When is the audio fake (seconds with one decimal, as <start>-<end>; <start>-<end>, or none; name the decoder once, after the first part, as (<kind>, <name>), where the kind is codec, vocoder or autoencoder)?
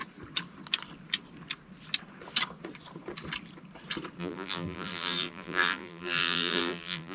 4.2-7.1 (vocoder, BigVGAN v2)